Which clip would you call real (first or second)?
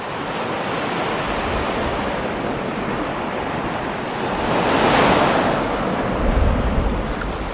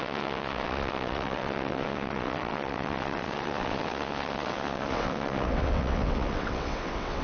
first